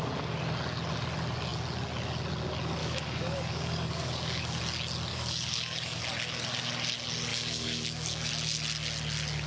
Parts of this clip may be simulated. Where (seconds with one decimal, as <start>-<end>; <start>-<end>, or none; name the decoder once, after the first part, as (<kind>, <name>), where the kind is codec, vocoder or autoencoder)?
2.8-4.6 (codec, DAC); 5.1-6.0; 7.3-8.3